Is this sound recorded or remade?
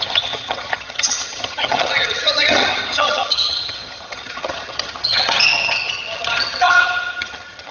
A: remade